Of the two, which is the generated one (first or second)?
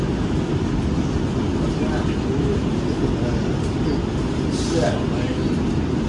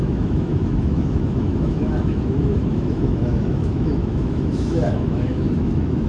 second